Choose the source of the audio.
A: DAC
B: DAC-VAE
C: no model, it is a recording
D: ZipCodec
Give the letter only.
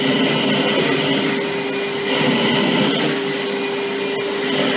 C